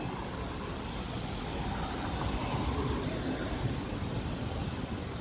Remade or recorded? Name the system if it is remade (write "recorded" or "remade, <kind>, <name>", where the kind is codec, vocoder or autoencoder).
recorded